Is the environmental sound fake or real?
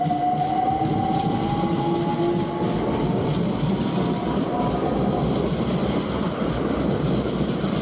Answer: real